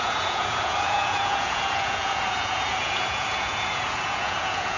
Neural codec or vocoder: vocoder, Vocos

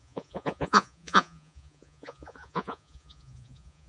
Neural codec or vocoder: vocoder, Vocos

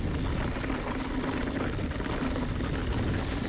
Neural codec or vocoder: none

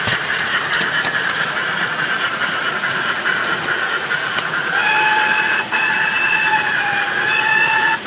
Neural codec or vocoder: vocoder, Vocos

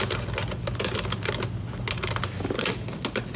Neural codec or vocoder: none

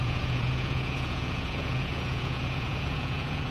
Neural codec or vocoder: vocoder, Vocos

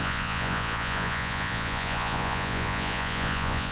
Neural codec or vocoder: vocoder, Vocos